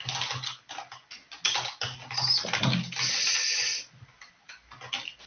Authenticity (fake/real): real